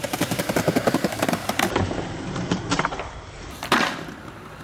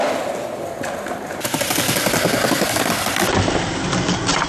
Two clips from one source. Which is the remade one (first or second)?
first